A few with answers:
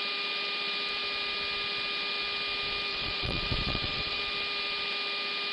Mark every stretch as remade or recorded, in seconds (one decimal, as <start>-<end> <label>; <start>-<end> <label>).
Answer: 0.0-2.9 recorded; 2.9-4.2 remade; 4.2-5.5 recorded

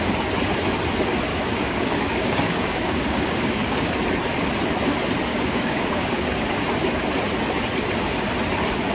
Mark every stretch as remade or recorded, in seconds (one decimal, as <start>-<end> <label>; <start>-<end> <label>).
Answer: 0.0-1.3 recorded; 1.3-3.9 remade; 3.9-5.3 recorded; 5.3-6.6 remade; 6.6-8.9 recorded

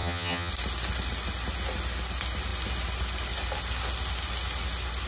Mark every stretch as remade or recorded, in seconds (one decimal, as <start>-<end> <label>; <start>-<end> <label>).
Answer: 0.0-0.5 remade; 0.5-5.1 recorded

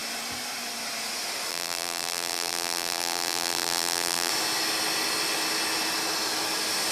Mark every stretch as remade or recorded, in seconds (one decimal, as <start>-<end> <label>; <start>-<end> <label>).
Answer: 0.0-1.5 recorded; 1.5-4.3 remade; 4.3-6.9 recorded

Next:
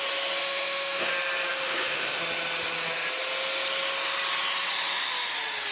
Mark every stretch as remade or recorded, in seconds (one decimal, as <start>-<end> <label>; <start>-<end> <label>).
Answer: 0.0-0.4 recorded; 0.4-1.1 remade; 1.1-1.5 recorded; 1.5-2.2 remade; 2.2-5.7 recorded

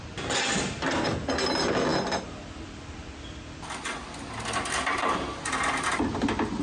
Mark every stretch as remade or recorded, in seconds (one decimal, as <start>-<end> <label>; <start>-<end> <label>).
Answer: 0.0-6.6 recorded